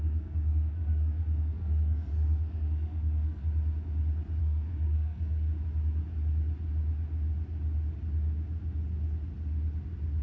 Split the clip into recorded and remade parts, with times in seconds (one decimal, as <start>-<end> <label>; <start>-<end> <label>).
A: 0.0-3.4 remade; 3.4-4.4 recorded; 4.4-5.5 remade; 5.5-10.2 recorded